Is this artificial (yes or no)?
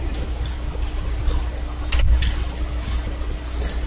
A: no